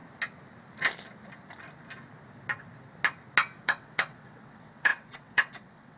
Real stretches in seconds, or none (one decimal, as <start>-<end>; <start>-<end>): 0.0-3.6